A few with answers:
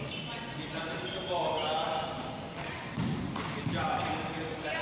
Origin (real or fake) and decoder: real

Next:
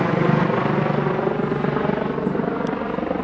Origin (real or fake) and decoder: real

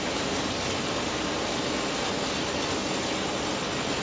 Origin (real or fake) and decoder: real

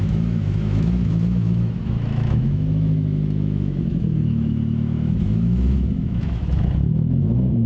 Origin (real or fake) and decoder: fake, autoencoder, DAC-VAE